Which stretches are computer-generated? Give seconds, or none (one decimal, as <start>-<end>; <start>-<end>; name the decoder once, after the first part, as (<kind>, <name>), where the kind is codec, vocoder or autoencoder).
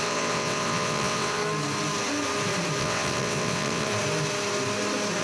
0.0-1.4 (vocoder, WaveNeXt); 2.8-3.9